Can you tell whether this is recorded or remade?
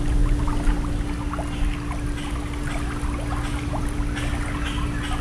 recorded